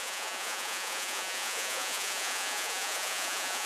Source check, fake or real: fake